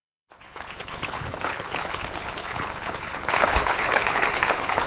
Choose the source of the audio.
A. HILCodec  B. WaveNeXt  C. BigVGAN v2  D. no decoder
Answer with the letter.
A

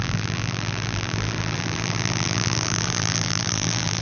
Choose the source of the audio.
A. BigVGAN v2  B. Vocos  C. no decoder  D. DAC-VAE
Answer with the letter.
A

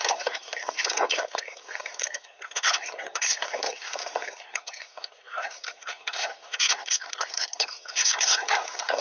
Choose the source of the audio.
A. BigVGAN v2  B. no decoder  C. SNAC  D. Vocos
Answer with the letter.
C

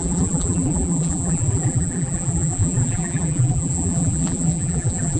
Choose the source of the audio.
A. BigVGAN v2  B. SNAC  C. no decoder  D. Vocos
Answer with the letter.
A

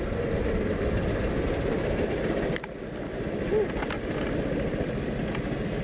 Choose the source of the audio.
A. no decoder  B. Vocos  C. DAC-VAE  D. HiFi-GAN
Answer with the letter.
A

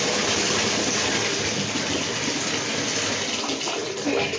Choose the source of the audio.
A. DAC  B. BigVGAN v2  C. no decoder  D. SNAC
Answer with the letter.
C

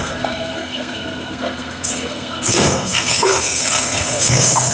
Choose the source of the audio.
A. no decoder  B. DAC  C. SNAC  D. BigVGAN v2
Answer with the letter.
C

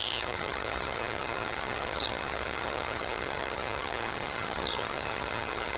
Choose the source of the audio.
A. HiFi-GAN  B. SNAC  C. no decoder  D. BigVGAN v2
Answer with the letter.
A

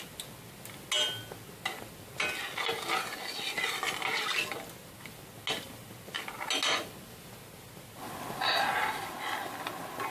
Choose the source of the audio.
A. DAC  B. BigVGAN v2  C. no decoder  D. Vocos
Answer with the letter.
C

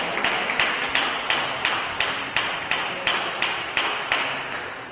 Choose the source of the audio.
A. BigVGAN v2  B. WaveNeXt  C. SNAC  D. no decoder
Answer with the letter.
D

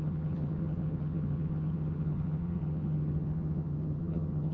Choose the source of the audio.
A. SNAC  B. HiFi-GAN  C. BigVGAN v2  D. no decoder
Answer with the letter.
B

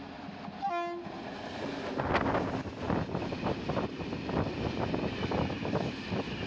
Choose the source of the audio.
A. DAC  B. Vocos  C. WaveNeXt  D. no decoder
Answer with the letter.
D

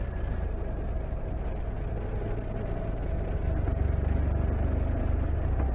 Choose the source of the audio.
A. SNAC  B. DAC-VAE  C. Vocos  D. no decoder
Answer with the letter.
D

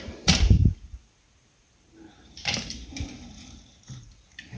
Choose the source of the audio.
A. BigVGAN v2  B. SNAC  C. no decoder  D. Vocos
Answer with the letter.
A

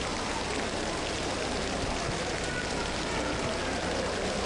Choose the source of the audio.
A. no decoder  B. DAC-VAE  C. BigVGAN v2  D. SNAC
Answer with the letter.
A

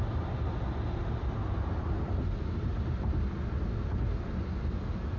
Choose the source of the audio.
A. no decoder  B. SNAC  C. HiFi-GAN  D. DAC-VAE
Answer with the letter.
A